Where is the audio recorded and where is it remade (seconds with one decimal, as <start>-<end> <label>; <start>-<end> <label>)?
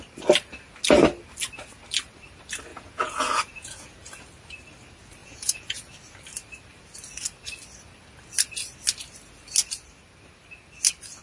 0.0-2.7 recorded; 2.7-4.1 remade; 4.1-5.2 recorded; 5.2-5.9 remade; 5.9-11.2 recorded